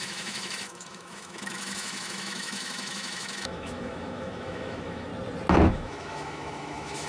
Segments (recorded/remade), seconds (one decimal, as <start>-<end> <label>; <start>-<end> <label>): 0.0-5.1 remade; 5.1-5.7 recorded; 5.7-7.1 remade